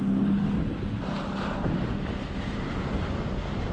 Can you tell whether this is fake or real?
real